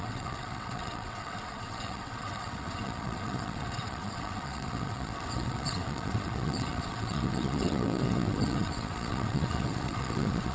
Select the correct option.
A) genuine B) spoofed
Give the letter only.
B